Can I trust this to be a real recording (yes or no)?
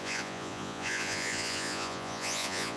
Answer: no